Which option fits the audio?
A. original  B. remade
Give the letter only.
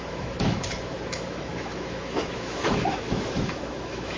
B